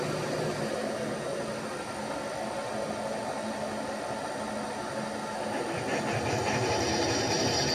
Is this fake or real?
real